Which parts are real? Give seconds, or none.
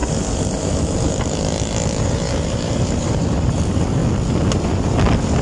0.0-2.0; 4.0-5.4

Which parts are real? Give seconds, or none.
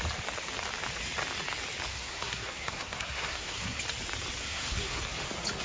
0.0-1.9; 3.8-4.4; 5.0-5.6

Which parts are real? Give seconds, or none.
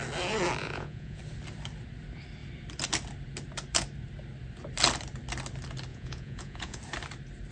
0.0-0.6; 1.2-5.9; 6.8-7.5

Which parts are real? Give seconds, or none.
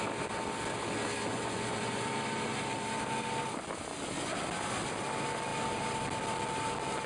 0.0-1.3; 2.1-7.1